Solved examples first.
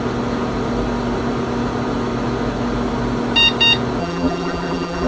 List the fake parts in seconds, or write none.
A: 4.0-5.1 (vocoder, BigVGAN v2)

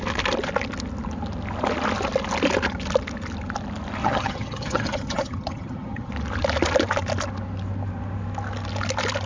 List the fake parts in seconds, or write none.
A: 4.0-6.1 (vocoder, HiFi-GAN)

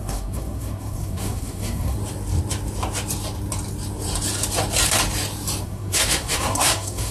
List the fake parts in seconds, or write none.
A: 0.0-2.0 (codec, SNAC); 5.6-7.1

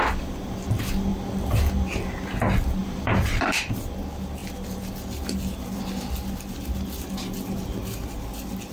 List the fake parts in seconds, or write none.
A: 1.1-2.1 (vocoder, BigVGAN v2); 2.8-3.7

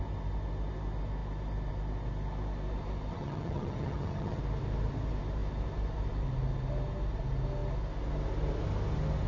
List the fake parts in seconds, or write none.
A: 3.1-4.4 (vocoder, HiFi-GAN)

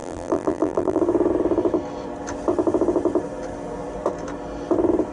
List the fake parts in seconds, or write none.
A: 0.0-1.0 (vocoder, BigVGAN v2)

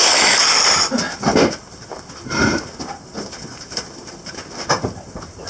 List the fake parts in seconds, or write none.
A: 3.5-4.3 (vocoder, BigVGAN v2)